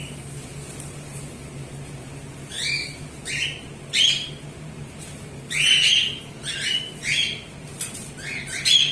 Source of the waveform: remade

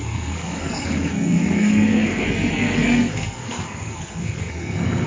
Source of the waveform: remade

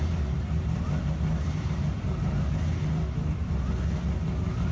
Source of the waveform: recorded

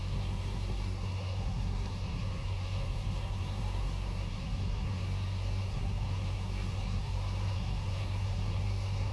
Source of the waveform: remade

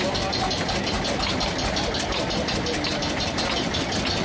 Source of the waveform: recorded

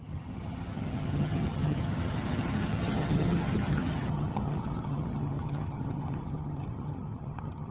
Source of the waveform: remade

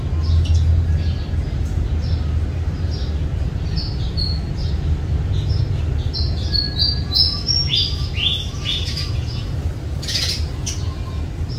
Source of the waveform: recorded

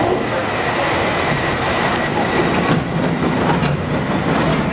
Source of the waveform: recorded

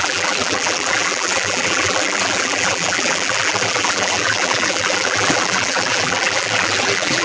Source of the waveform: remade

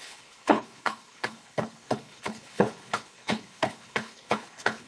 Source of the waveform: remade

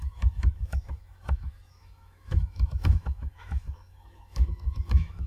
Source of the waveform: remade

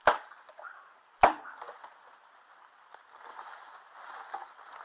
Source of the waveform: recorded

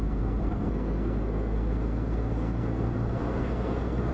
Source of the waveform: remade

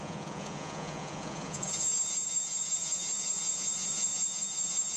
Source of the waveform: remade